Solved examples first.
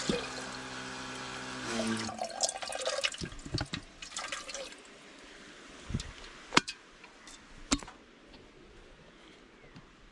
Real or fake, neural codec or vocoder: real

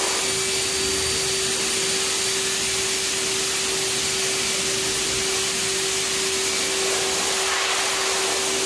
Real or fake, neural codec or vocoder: real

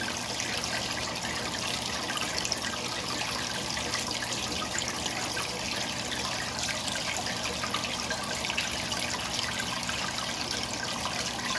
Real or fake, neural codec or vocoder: real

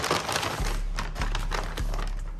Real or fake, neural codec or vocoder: real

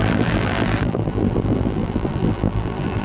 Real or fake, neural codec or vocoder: fake, vocoder, BigVGAN v2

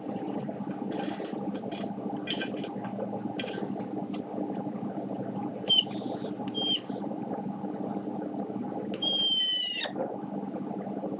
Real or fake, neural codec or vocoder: real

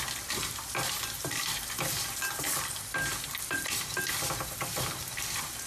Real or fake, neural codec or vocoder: real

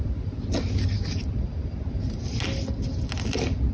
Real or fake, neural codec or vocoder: real